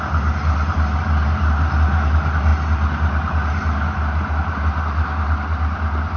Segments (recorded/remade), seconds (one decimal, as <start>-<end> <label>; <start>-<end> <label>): 0.0-6.2 recorded